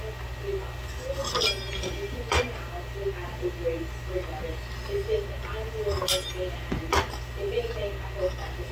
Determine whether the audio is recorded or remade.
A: recorded